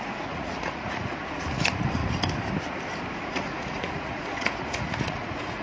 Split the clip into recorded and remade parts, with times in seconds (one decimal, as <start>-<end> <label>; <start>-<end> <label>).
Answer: 0.0-2.0 remade; 2.0-3.1 recorded; 3.1-5.6 remade